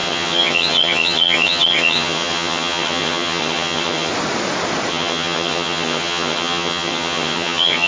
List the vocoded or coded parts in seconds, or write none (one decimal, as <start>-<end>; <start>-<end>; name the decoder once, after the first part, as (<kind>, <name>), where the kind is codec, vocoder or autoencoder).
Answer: 0.0-4.1 (vocoder, HiFi-GAN); 4.9-7.9